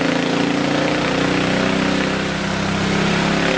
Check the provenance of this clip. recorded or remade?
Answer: recorded